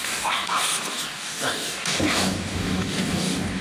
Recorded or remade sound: remade